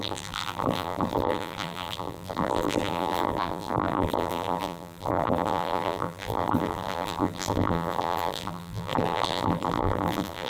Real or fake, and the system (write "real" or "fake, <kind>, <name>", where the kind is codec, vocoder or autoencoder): fake, vocoder, BigVGAN v2